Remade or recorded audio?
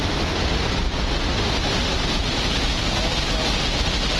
recorded